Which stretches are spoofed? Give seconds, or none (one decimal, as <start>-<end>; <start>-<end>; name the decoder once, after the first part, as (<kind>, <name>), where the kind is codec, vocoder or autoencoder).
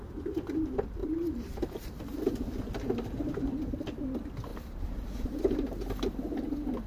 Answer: 1.0-1.8 (vocoder, BigVGAN v2); 4.5-6.0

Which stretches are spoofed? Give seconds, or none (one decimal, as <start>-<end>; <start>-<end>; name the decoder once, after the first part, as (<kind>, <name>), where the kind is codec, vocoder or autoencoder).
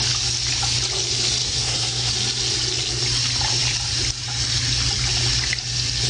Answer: 1.4-2.1 (codec, SNAC)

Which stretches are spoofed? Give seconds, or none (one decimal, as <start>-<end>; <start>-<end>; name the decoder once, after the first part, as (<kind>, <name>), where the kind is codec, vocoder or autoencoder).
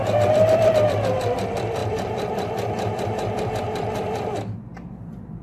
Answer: 0.0-5.4 (vocoder, BigVGAN v2)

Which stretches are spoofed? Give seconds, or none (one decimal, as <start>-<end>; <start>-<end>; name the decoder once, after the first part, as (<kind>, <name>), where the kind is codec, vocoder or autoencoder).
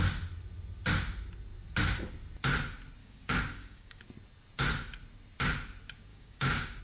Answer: 3.0-4.0 (codec, DAC); 6.1-6.8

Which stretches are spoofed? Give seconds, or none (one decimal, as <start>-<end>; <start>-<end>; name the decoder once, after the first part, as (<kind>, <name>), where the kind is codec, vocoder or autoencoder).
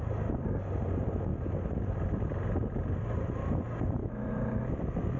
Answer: 4.0-4.6 (autoencoder, DAC-VAE)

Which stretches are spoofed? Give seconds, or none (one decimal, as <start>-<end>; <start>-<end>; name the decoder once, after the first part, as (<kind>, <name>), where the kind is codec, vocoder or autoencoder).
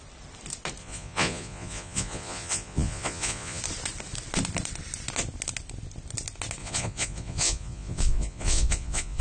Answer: 0.8-3.6 (vocoder, Vocos); 6.6-9.2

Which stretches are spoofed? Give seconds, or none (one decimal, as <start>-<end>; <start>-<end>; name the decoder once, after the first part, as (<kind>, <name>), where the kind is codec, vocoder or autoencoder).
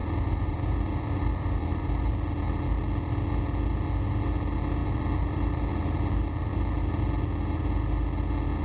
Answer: 0.0-1.8 (vocoder, BigVGAN v2); 4.8-5.7